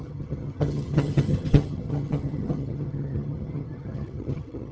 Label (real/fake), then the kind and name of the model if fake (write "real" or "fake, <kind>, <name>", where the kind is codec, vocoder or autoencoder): fake, vocoder, HiFi-GAN